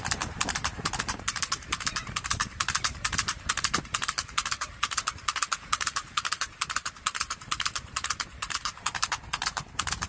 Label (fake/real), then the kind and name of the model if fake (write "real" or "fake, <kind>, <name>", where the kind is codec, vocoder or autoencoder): fake, vocoder, BigVGAN v2